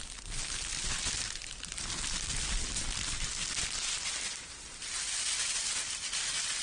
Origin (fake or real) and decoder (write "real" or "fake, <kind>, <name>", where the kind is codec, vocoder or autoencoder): real